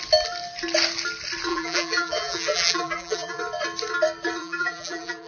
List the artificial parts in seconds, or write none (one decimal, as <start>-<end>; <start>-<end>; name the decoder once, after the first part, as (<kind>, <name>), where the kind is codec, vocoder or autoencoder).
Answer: 1.5-3.4 (vocoder, BigVGAN v2); 4.4-5.3